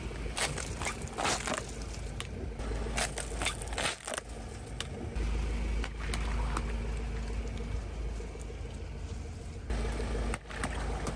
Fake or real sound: real